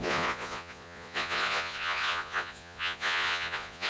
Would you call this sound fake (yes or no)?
yes